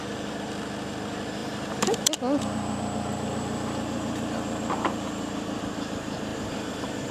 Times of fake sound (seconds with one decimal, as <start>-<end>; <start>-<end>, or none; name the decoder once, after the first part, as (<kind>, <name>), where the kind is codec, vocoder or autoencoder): 1.4-2.2 (vocoder, BigVGAN v2); 3.1-5.3; 6.3-7.1